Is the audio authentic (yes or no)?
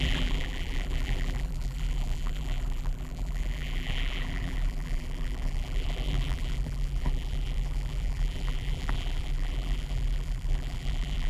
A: no